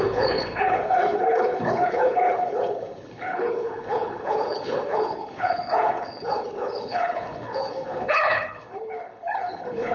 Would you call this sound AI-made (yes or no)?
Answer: yes